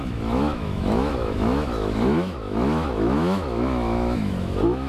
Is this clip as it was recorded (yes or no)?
no